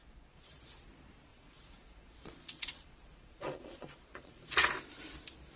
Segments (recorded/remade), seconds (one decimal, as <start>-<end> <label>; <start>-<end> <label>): 0.0-0.9 remade; 0.9-1.3 recorded; 1.3-4.7 remade; 4.7-5.6 recorded